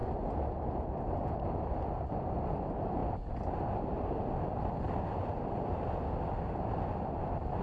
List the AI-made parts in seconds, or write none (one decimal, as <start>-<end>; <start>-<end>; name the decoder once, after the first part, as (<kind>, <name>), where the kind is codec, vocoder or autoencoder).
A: none